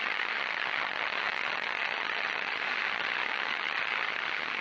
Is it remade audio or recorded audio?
remade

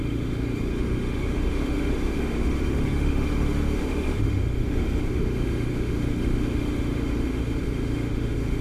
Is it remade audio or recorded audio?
remade